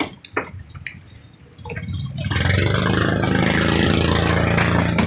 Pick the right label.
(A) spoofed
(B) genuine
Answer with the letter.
B